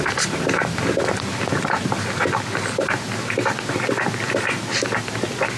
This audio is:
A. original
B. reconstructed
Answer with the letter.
A